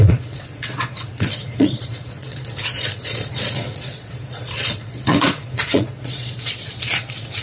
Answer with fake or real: fake